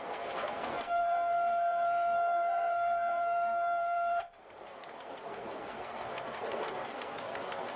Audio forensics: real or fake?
fake